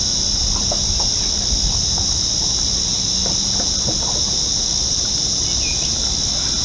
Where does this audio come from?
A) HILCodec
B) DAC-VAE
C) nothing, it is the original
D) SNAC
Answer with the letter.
C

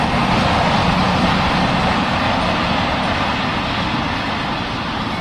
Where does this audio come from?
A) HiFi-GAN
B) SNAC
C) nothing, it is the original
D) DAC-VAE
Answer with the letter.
C